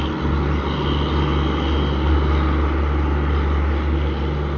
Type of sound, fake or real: real